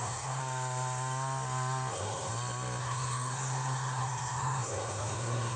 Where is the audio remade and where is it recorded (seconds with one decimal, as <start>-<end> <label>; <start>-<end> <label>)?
0.0-0.4 remade; 0.4-1.9 recorded; 1.9-2.3 remade; 2.3-2.8 recorded; 2.8-5.6 remade